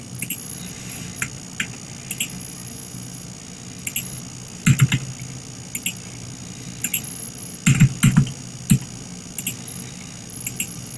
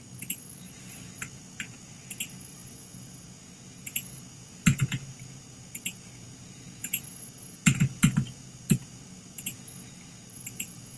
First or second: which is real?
first